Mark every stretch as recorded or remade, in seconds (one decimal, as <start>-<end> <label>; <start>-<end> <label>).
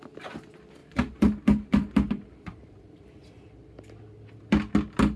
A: 0.0-0.8 recorded; 0.8-3.4 remade; 3.4-5.2 recorded